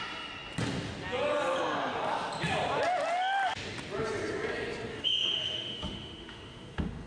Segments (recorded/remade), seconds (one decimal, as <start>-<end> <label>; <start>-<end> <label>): 0.0-4.9 recorded; 4.9-7.1 remade